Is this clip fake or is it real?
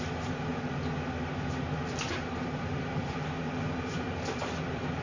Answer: fake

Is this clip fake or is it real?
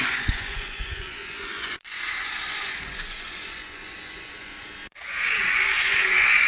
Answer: fake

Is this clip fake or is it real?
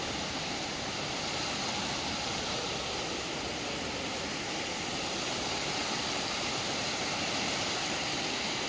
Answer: real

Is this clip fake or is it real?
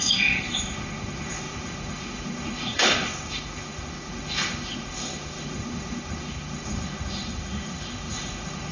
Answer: fake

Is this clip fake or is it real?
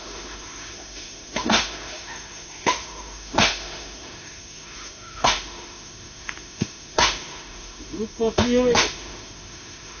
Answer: fake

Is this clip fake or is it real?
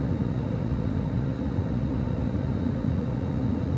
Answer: fake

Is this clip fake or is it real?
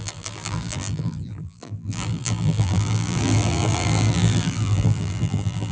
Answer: fake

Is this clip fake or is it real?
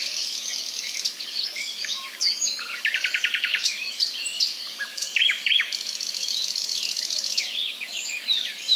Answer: fake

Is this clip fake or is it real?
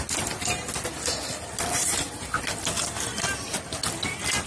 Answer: real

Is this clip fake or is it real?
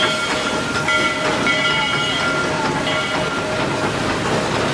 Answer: real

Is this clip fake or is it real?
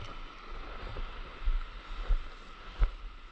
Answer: real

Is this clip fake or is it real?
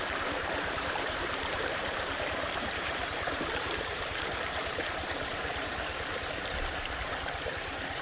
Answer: fake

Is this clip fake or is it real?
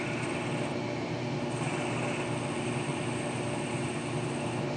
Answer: real